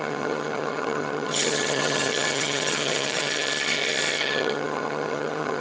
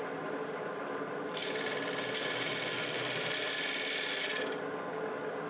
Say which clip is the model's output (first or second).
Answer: first